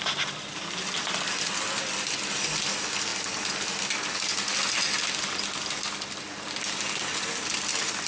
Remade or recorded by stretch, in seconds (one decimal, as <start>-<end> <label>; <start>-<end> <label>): 0.0-8.1 recorded